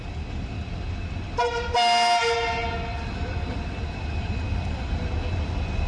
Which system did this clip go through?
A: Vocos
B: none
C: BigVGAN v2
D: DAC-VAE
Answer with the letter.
B